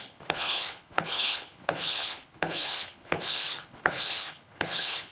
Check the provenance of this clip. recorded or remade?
remade